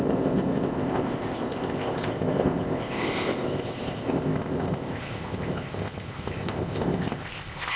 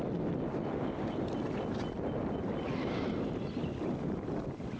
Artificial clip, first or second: first